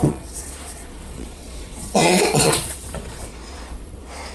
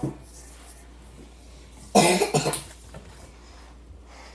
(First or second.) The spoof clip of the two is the first